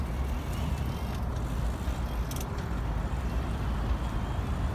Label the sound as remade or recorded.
recorded